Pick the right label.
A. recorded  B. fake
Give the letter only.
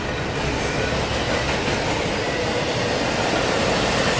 A